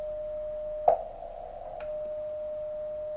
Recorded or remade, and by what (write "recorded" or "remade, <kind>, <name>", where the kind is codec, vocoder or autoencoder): recorded